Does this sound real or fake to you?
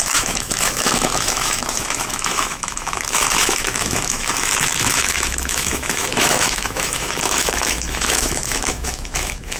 fake